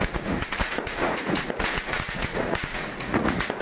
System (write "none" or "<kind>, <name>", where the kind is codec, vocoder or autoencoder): vocoder, Vocos